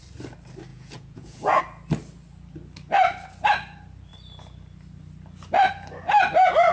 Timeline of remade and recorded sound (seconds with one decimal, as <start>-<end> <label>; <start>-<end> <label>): 0.0-0.7 recorded; 0.7-1.6 remade; 1.6-6.7 recorded